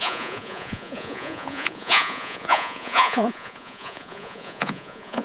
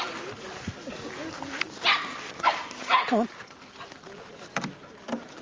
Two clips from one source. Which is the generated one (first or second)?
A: first